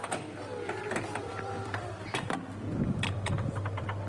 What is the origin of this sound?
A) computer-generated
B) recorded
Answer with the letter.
A